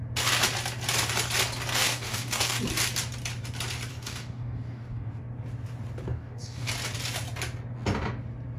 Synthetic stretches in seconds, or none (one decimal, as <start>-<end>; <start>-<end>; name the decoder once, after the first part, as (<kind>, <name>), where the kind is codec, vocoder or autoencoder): 1.7-2.6 (codec, DAC); 3.9-5.2; 6.1-6.7